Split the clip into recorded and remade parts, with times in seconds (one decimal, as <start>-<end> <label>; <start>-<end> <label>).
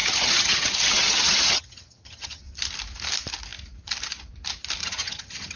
0.0-2.4 remade; 2.4-4.8 recorded; 4.8-5.6 remade